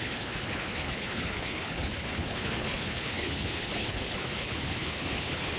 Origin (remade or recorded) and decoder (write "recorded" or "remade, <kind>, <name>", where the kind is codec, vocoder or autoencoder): remade, codec, HILCodec